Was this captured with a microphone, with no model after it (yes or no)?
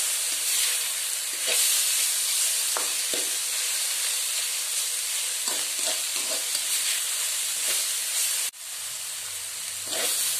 yes